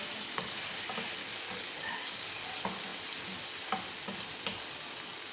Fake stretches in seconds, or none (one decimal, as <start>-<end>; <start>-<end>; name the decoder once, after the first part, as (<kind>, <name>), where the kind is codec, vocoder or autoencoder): 1.2-2.5 (codec, DAC)